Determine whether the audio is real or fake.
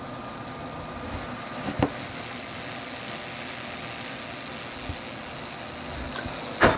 real